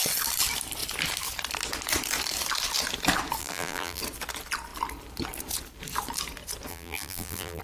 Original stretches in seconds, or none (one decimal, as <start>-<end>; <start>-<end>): 0.0-3.4; 4.0-6.7